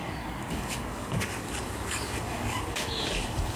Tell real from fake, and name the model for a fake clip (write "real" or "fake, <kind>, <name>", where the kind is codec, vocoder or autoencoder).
fake, codec, DAC